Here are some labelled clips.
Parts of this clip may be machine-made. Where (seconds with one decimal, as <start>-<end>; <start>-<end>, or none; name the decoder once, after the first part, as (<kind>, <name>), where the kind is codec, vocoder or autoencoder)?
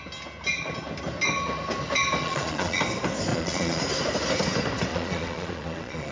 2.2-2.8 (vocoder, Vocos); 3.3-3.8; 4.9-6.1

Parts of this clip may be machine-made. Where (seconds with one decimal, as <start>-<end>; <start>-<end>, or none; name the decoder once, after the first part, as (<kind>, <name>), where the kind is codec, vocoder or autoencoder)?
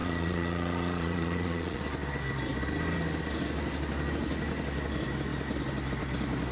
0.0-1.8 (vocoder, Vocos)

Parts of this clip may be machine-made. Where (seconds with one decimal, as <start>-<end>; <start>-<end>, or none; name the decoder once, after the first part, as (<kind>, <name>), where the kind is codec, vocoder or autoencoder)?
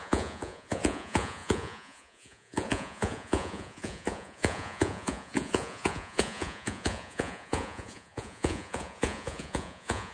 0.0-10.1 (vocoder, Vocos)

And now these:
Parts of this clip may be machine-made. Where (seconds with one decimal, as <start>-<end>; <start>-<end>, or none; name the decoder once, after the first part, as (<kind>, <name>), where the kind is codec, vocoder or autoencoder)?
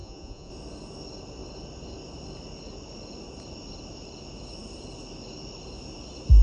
0.0-0.5 (vocoder, Vocos)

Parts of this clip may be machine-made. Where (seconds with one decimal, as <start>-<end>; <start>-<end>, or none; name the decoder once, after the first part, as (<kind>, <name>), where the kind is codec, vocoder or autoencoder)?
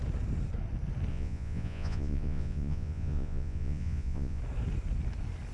1.1-4.4 (vocoder, Vocos)